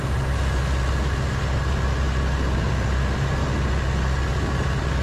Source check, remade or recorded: recorded